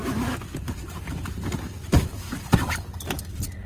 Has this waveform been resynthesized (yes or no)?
no